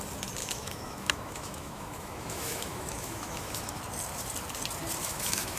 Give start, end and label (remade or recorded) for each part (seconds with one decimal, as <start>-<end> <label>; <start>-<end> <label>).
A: 0.0-0.4 recorded; 0.4-3.8 remade; 3.8-5.0 recorded; 5.0-5.6 remade